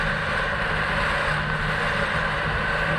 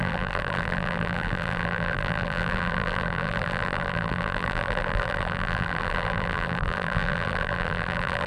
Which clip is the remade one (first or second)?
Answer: second